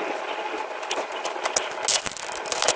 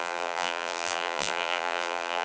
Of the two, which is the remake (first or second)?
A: second